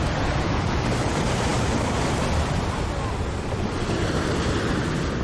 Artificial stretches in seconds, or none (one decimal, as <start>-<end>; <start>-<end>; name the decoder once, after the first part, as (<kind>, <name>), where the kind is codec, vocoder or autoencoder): none